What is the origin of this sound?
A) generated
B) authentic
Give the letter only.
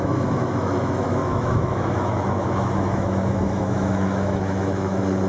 A